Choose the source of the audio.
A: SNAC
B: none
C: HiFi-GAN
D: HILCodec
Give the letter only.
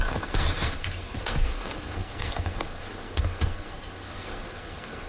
A